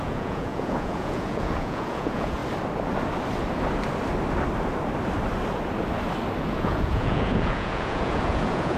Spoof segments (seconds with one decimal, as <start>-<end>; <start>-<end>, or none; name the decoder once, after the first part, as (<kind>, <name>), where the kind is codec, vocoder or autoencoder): 0.0-2.4 (vocoder, Vocos); 6.4-8.8